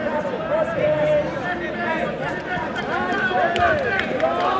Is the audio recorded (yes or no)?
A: yes